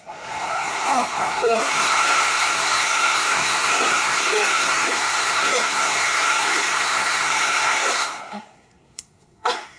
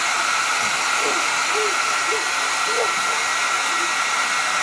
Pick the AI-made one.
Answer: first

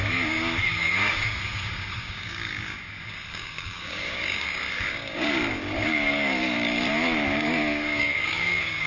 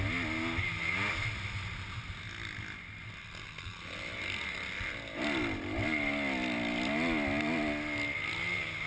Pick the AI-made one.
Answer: first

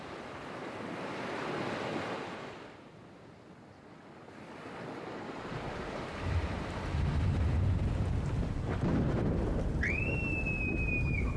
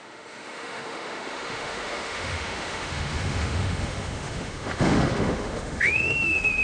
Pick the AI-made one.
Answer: second